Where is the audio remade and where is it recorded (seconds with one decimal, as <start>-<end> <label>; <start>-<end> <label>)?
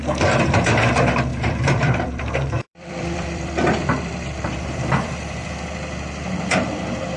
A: 0.0-1.3 recorded; 1.3-5.5 remade; 5.5-7.2 recorded